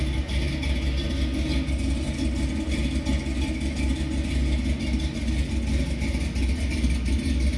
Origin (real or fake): real